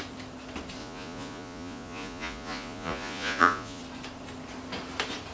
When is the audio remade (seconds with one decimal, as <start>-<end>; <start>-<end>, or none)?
0.8-3.8